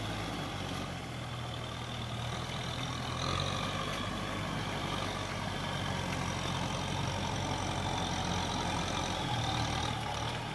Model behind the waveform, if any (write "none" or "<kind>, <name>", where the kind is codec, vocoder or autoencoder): none